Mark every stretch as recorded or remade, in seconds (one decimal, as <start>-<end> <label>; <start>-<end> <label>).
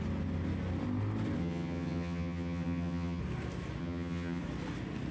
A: 0.0-1.4 recorded; 1.4-3.2 remade; 3.2-3.8 recorded; 3.8-4.4 remade; 4.4-5.1 recorded